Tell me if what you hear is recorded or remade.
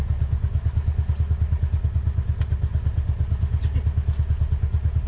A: recorded